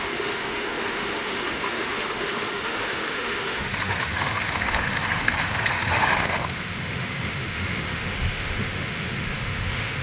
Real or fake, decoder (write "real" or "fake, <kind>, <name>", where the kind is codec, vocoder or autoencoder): fake, autoencoder, DAC-VAE